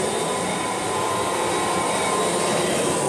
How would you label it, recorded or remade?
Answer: recorded